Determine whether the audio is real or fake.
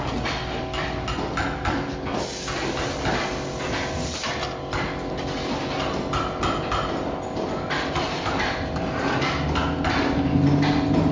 real